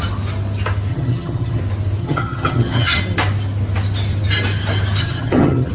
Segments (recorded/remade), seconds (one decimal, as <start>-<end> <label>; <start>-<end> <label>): 0.0-0.9 recorded; 0.9-1.6 remade; 1.6-2.0 recorded; 2.0-3.0 remade; 3.0-5.0 recorded; 5.0-5.7 remade